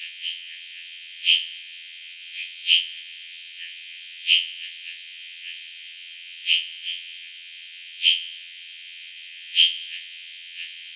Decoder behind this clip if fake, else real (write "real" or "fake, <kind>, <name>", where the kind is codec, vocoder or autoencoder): fake, vocoder, Vocos